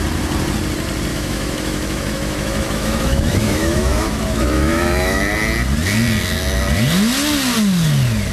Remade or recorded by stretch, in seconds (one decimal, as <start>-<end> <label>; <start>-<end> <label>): 0.0-1.1 recorded; 1.1-5.2 remade; 5.2-8.3 recorded